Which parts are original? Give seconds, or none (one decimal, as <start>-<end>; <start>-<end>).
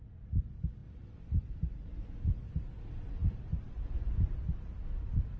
0.0-0.8; 2.0-5.4